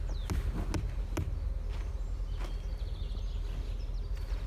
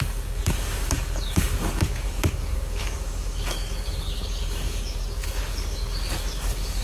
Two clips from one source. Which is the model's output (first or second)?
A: second